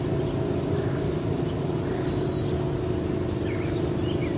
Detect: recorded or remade recorded